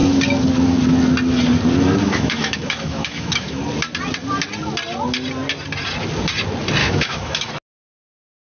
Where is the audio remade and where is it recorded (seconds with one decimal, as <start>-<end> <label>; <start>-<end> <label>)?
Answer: 0.0-2.0 recorded; 2.0-3.6 remade; 3.6-6.8 recorded; 6.8-7.5 remade; 7.5-8.5 recorded